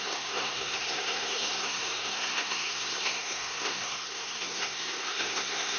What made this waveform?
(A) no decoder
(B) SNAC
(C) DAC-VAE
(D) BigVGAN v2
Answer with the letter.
B